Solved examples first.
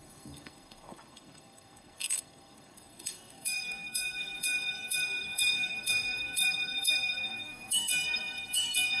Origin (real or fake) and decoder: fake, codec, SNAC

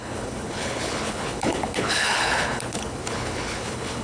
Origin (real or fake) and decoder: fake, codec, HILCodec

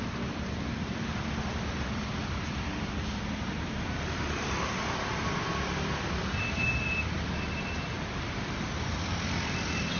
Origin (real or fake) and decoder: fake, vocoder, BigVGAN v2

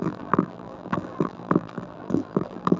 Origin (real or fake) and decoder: fake, vocoder, BigVGAN v2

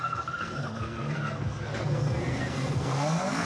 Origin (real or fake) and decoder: fake, codec, SNAC